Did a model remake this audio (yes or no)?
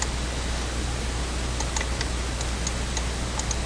no